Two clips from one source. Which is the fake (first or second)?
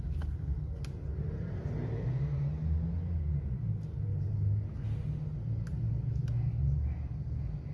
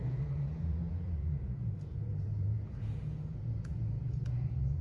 second